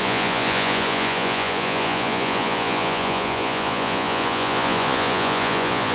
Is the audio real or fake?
fake